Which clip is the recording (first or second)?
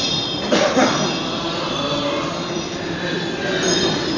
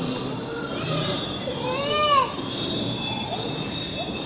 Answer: first